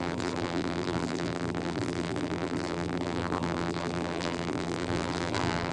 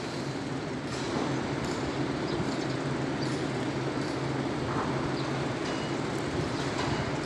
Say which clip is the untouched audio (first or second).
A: second